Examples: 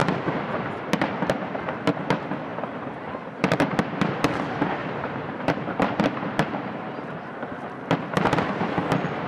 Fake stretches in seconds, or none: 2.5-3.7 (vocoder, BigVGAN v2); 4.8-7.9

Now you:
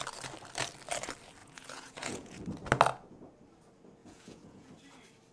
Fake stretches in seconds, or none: 1.4-2.4 (vocoder, Vocos); 4.0-4.7

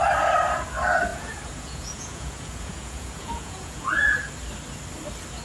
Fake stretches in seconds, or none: 1.1-4.3 (vocoder, Vocos)

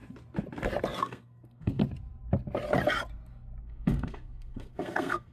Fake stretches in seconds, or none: 1.0-1.8 (codec, SNAC); 3.6-5.3

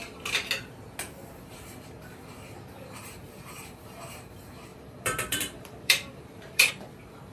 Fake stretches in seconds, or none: 3.0-4.3 (vocoder, BigVGAN v2); 4.7-6.7

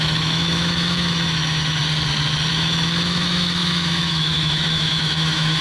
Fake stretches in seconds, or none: 0.0-1.8 (autoencoder, DAC-VAE); 2.5-5.6

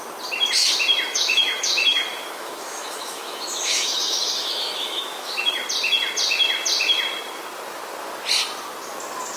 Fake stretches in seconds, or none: 1.1-5.6 (autoencoder, DAC-VAE)

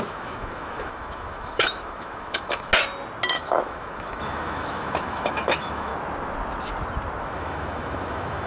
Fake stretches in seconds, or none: 0.0-2.7 (autoencoder, DAC-VAE); 3.3-5.9; 7.2-8.5